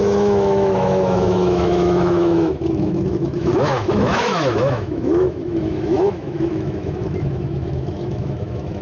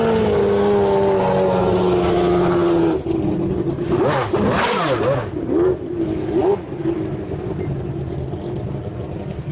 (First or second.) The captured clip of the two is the second